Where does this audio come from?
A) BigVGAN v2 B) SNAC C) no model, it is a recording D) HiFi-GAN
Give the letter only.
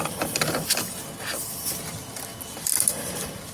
C